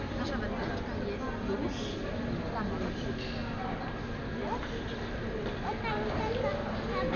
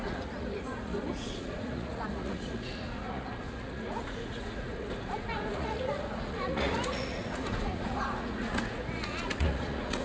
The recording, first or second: first